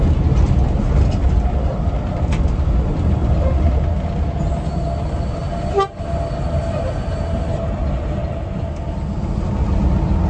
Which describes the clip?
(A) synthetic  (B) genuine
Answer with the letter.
B